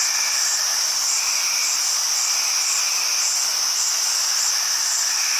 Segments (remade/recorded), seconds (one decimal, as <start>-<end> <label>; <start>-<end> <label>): 0.0-0.7 recorded; 0.7-1.9 remade; 1.9-5.4 recorded